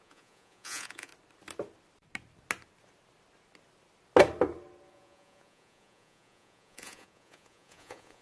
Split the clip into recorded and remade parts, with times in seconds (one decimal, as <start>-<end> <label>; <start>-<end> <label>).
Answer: 0.0-1.1 remade; 1.1-4.9 recorded; 4.9-8.2 remade